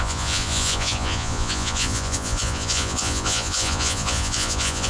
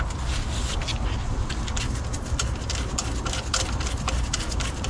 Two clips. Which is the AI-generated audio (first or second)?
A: first